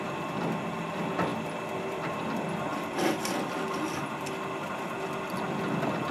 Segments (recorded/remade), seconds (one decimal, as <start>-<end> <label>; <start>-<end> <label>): 0.0-1.3 recorded; 1.3-2.0 remade; 2.0-6.1 recorded